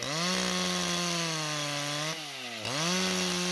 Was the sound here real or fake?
real